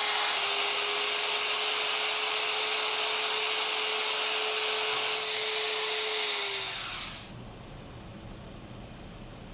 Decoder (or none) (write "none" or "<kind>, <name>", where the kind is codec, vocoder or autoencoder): none